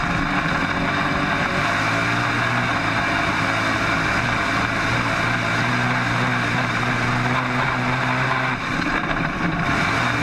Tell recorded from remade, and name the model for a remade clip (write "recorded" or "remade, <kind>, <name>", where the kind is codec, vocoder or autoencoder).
recorded